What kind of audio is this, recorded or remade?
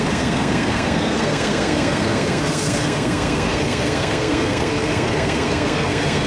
remade